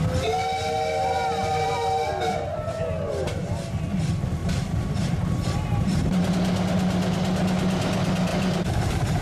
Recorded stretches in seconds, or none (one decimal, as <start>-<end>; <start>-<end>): 0.0-4.4; 6.3-8.3